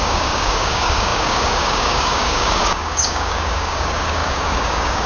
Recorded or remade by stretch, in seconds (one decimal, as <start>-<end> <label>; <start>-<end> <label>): 0.0-5.1 remade